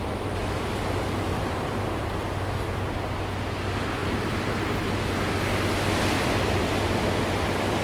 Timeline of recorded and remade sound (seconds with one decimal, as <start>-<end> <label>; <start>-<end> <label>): 0.0-0.4 recorded; 0.4-2.0 remade; 2.0-4.0 recorded; 4.0-5.0 remade; 5.0-7.8 recorded